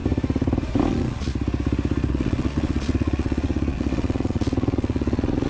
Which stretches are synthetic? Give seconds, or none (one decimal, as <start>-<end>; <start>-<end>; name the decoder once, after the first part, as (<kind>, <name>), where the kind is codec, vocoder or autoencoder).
0.9-1.3 (vocoder, Vocos); 2.1-5.5